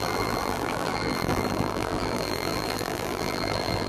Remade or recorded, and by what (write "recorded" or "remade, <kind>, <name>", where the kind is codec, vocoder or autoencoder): remade, vocoder, BigVGAN v2